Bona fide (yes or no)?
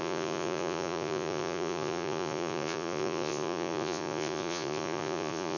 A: no